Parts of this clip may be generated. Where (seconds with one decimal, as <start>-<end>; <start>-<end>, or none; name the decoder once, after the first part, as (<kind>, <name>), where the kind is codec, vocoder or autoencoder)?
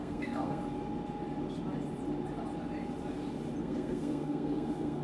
0.0-0.6 (codec, SNAC); 3.6-5.0